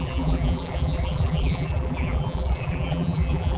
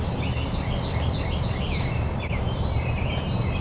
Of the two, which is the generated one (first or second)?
first